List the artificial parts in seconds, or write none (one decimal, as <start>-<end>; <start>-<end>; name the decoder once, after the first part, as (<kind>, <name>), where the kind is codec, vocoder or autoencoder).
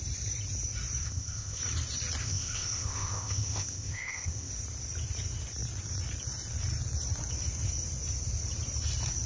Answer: 1.0-1.6 (codec, ZipCodec); 2.2-4.5